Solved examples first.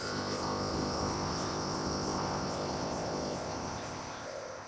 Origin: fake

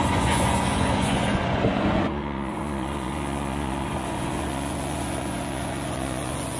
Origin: fake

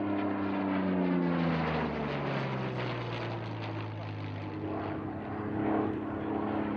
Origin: real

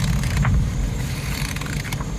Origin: fake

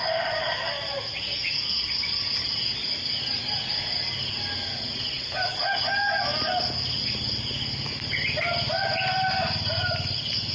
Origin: real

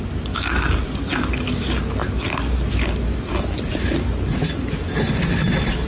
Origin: real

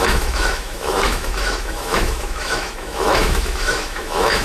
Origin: fake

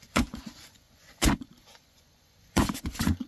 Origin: fake